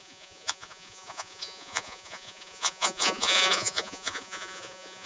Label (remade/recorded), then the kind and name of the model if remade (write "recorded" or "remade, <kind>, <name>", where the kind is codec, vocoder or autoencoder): remade, vocoder, Vocos